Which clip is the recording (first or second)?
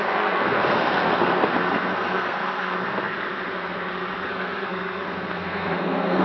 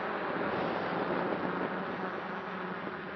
second